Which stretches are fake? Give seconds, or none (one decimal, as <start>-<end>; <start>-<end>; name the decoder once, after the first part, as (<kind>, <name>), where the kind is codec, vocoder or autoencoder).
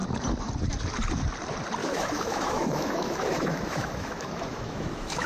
1.8-5.3 (autoencoder, DAC-VAE)